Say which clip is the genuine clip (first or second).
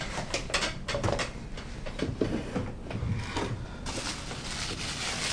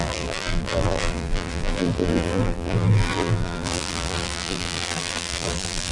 first